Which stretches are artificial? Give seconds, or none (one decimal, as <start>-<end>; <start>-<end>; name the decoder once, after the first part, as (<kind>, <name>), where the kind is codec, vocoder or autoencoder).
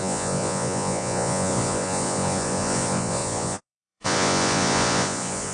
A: 0.0-5.5 (vocoder, Vocos)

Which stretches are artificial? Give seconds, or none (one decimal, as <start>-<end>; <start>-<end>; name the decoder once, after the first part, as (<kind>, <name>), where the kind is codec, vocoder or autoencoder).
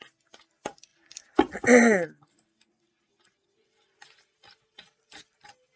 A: 0.9-1.5 (vocoder, BigVGAN v2)